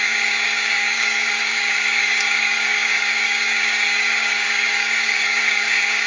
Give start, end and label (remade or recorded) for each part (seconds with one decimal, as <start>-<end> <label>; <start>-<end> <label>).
0.0-6.1 remade